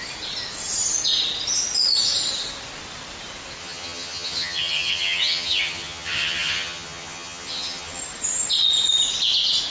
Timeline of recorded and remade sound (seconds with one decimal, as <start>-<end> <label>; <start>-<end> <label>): 0.0-3.6 recorded; 3.6-8.0 remade; 8.0-9.7 recorded